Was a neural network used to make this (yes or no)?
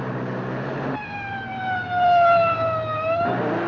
no